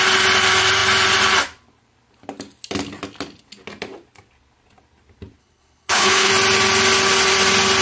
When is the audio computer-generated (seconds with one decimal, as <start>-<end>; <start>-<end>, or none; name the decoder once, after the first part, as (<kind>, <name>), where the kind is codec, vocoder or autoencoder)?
5.4-6.3 (codec, HILCodec)